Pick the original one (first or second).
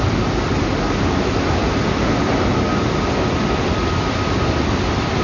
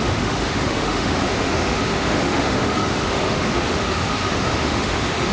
first